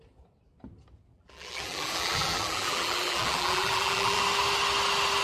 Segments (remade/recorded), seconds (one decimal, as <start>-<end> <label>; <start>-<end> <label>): 0.0-1.1 recorded; 1.1-4.2 remade; 4.2-5.2 recorded